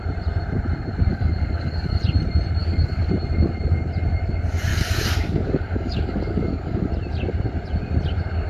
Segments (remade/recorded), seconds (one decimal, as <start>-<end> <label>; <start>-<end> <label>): 0.0-1.1 recorded; 1.1-2.0 remade; 2.0-2.6 recorded; 2.6-3.1 remade; 3.1-4.7 recorded; 4.7-6.9 remade; 6.9-8.5 recorded